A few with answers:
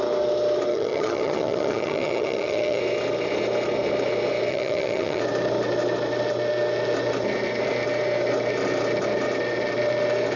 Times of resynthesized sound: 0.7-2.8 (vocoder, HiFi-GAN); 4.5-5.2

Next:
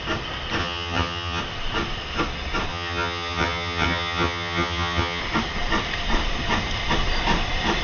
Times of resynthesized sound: 0.6-1.4 (vocoder, HiFi-GAN); 2.7-5.2

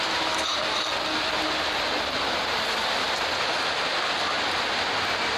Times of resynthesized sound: none

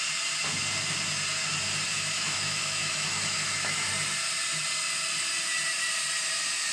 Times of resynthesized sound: 1.9-3.9 (autoencoder, DAC-VAE)